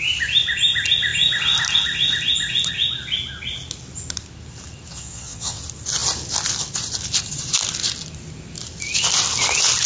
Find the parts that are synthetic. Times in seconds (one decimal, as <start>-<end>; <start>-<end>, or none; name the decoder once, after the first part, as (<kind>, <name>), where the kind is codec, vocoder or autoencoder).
4.9-5.6 (vocoder, WaveNeXt)